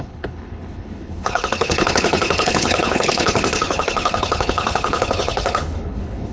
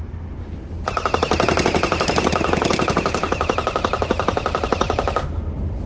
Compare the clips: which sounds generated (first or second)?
first